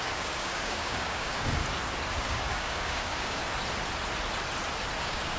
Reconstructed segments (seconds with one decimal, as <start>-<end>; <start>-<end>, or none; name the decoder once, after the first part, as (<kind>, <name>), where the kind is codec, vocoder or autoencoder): 0.0-1.6 (codec, DAC); 2.2-3.4; 5.0-5.4